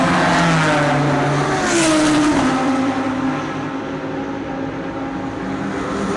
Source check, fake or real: real